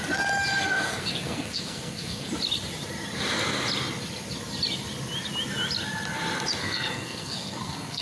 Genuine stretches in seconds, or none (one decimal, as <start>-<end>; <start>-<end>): 0.0-0.5; 2.3-6.6